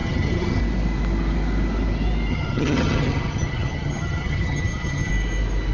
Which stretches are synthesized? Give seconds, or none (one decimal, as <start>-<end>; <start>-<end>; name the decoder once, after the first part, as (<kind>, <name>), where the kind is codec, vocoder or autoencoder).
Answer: 0.0-0.6 (vocoder, HiFi-GAN); 2.3-5.1